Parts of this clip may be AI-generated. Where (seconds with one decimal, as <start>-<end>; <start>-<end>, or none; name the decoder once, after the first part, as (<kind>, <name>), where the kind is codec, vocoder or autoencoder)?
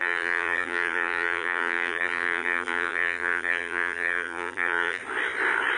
0.0-5.0 (vocoder, BigVGAN v2)